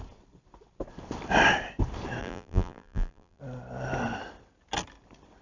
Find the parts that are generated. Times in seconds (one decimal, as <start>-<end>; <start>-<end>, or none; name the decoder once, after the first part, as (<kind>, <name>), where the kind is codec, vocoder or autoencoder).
2.2-3.4 (vocoder, BigVGAN v2)